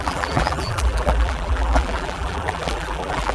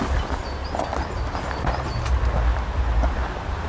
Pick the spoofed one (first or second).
first